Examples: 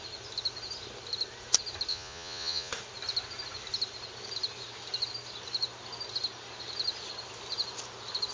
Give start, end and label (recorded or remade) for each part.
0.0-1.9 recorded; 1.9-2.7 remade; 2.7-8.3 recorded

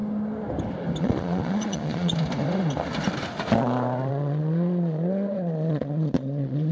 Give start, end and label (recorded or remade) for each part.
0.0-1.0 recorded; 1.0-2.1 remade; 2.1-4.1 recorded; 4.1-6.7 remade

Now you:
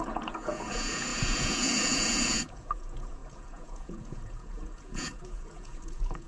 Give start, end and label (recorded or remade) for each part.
0.0-6.3 remade